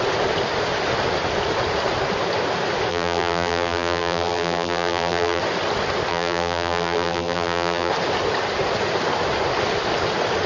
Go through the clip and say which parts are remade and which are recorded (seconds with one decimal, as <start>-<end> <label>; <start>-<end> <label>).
0.0-2.9 recorded; 2.9-5.4 remade; 5.4-6.1 recorded; 6.1-7.9 remade; 7.9-10.5 recorded